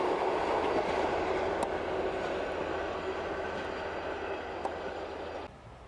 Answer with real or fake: real